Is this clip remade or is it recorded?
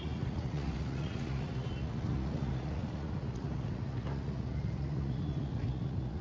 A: remade